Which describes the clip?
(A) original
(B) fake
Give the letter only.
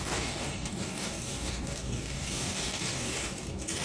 B